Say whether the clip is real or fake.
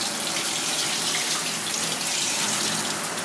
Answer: real